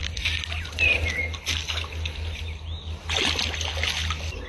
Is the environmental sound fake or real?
real